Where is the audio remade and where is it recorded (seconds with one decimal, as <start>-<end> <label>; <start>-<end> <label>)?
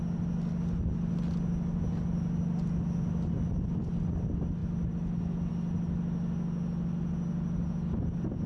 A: 0.0-8.5 recorded